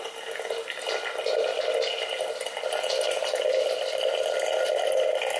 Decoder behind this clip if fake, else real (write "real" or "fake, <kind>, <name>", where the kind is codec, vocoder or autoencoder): real